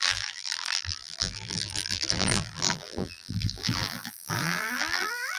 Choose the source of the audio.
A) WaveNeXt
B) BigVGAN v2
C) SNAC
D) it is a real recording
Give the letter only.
B